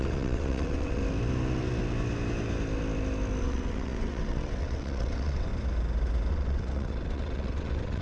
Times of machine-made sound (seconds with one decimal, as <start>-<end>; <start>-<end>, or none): 0.0-1.0; 3.4-5.5; 6.3-8.0